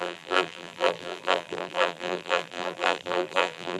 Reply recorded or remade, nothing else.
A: remade